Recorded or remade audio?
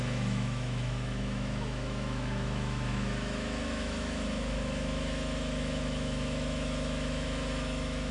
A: remade